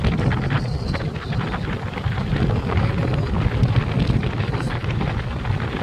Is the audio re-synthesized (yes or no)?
no